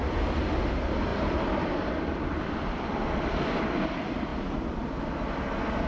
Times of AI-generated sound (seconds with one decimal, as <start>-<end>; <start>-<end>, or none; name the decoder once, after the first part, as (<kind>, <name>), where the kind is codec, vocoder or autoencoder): 1.1-3.3 (vocoder, BigVGAN v2); 4.3-4.9

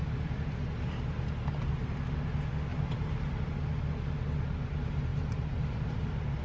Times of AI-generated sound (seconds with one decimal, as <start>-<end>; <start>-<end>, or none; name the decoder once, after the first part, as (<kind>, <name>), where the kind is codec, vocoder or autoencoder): 2.7-3.4 (vocoder, BigVGAN v2); 5.1-6.4

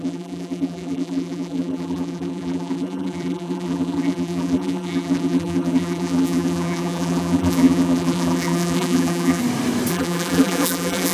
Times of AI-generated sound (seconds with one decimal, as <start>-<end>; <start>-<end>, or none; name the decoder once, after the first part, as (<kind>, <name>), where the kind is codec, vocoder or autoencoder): 0.0-9.4 (vocoder, BigVGAN v2); 9.9-11.1

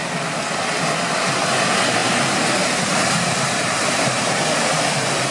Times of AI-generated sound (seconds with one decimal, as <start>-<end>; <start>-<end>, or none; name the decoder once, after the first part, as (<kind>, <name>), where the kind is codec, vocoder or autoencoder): 2.0-4.4 (vocoder, BigVGAN v2)